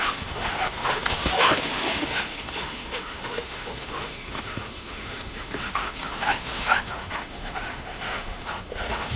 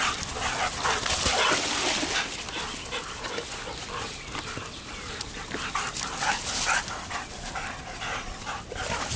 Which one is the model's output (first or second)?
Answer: first